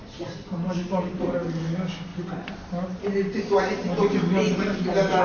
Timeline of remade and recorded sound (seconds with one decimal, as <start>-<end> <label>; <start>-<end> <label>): 0.0-1.6 remade; 1.6-2.1 recorded; 2.1-5.2 remade